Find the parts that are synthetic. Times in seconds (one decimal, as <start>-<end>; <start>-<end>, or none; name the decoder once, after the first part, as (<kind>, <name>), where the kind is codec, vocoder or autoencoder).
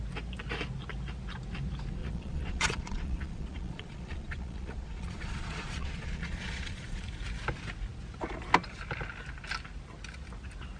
2.0-7.0 (vocoder, Vocos)